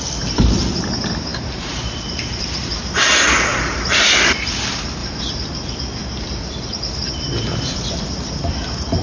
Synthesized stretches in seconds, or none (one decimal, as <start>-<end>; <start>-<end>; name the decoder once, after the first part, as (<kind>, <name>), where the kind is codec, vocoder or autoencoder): 1.3-2.9 (vocoder, BigVGAN v2); 3.5-4.1; 5.0-5.7